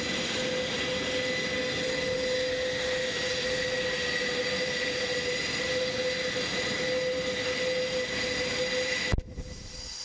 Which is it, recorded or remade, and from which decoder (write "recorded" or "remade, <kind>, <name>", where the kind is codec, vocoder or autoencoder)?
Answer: recorded